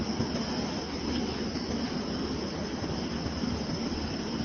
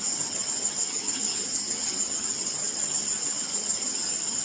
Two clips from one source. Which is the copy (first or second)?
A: second